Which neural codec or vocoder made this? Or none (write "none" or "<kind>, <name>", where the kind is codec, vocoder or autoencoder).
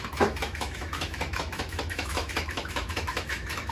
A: autoencoder, DAC-VAE